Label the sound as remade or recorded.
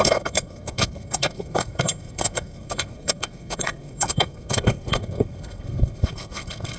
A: remade